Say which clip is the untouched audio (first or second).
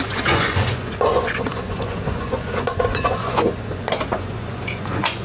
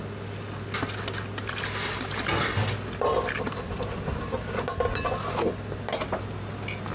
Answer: second